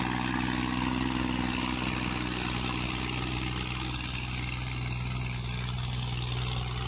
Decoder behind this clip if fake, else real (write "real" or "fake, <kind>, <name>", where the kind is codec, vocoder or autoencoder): real